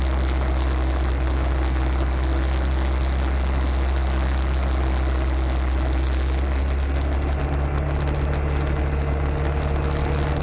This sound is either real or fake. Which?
real